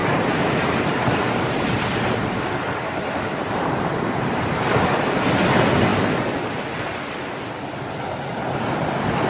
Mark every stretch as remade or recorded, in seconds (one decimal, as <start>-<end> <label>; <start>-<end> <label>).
0.0-4.6 remade; 4.6-9.3 recorded